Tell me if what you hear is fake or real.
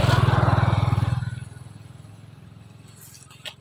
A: real